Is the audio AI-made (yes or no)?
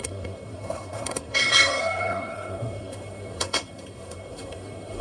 yes